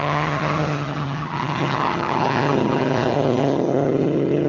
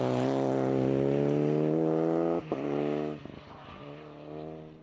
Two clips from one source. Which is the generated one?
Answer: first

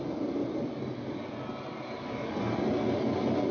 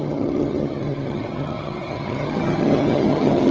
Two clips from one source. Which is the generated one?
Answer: second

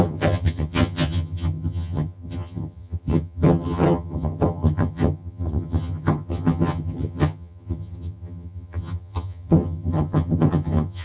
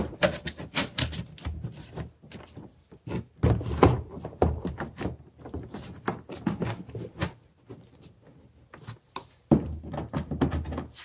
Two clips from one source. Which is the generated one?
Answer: first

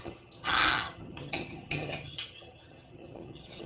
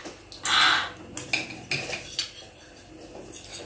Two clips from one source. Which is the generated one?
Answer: first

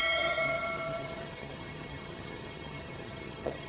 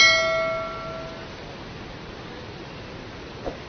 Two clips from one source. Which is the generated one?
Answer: first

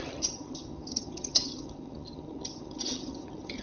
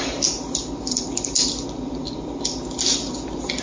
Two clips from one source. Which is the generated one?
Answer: first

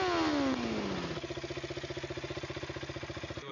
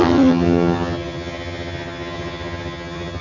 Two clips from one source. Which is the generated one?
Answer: second